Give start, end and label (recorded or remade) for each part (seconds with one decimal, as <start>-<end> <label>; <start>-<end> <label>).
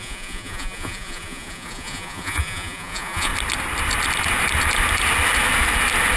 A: 0.0-3.3 remade; 3.3-6.2 recorded